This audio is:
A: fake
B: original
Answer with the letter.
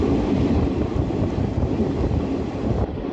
B